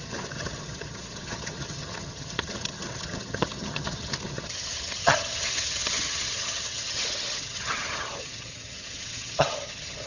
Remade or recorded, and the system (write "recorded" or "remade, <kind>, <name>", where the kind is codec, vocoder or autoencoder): remade, vocoder, HiFi-GAN